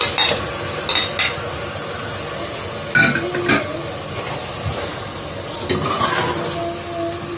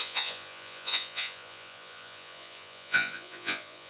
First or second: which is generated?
second